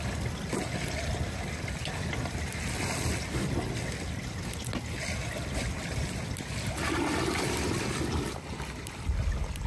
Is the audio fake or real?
real